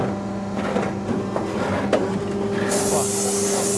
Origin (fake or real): real